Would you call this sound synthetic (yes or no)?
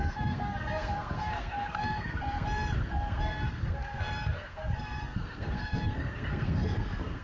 yes